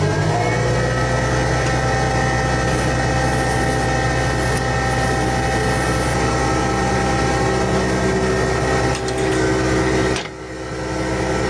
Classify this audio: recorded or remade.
recorded